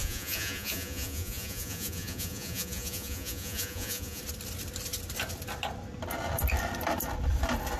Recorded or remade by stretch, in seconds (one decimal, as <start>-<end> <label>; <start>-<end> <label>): 0.0-4.2 remade; 4.2-7.8 recorded